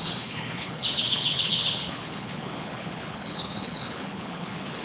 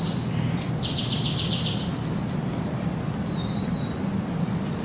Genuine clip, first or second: second